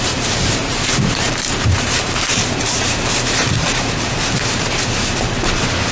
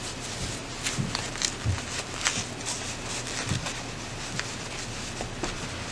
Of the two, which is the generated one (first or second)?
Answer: first